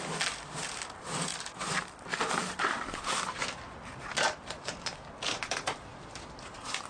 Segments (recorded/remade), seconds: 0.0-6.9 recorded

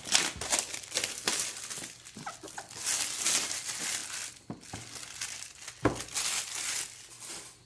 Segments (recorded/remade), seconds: 0.0-7.7 recorded

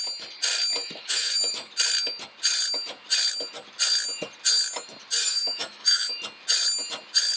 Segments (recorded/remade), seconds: 0.0-0.8 recorded; 0.8-1.5 remade; 1.5-5.2 recorded; 5.2-6.1 remade; 6.1-7.4 recorded

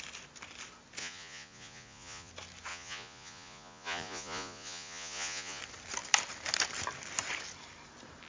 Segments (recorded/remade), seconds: 0.0-1.0 recorded; 1.0-2.3 remade; 2.3-2.7 recorded; 2.7-5.6 remade; 5.6-8.3 recorded